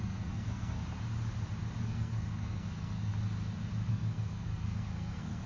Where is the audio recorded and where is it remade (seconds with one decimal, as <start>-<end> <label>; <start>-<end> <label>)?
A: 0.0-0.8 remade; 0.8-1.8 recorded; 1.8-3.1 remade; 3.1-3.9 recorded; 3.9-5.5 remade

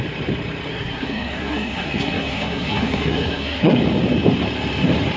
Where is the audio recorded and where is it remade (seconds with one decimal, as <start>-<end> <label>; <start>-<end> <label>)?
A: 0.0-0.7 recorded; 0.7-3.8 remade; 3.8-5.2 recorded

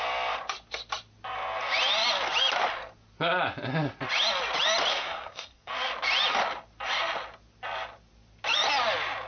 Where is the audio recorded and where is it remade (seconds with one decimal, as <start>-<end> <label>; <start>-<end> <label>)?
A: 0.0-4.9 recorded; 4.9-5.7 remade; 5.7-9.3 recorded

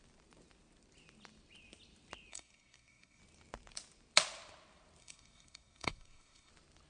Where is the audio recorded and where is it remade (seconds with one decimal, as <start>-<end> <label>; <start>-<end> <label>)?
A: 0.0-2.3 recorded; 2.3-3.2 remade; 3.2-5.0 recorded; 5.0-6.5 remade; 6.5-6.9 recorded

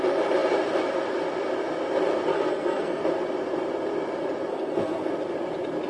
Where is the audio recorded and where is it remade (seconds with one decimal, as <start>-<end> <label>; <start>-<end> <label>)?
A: 0.0-2.3 recorded; 2.3-3.0 remade; 3.0-4.5 recorded; 4.5-5.1 remade; 5.1-5.9 recorded

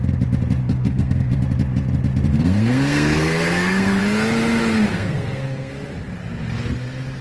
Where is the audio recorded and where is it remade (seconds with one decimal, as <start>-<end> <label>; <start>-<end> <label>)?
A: 0.0-0.6 recorded; 0.6-1.4 remade; 1.4-2.3 recorded; 2.3-4.0 remade; 4.0-4.9 recorded; 4.9-5.7 remade; 5.7-7.2 recorded